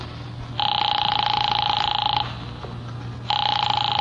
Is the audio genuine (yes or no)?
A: yes